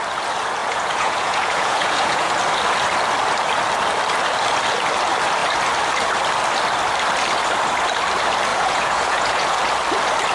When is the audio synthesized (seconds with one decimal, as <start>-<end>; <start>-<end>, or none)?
0.6-2.3; 8.5-9.6